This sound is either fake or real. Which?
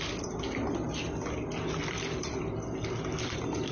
real